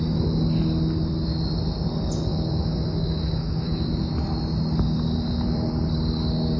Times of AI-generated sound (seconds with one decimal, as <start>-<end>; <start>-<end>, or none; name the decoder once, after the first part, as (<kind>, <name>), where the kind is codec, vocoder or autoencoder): 2.3-4.0 (autoencoder, DAC-VAE)